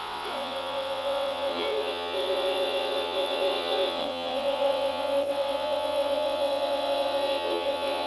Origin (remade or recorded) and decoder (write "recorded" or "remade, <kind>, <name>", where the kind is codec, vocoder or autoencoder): remade, vocoder, WaveNeXt